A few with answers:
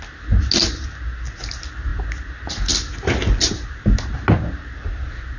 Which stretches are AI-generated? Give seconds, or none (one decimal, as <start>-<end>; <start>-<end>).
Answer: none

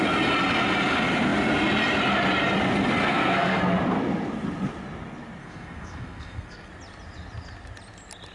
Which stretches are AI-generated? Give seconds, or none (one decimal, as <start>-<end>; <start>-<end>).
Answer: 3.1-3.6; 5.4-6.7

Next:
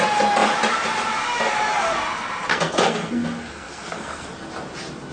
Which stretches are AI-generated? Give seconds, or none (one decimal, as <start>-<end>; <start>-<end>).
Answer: 2.5-4.3